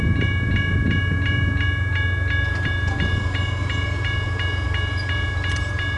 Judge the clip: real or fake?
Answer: real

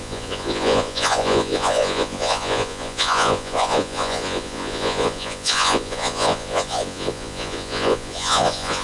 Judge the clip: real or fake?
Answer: fake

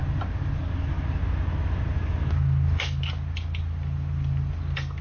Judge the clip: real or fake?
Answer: real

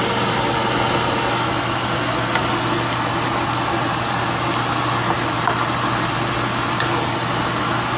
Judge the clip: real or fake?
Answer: real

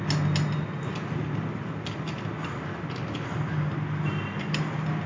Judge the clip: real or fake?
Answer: real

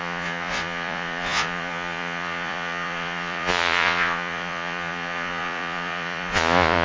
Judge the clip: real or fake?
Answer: fake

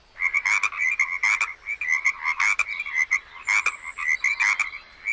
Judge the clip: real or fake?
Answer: real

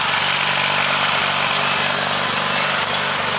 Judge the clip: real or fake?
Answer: real